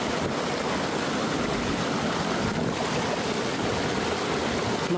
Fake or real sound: real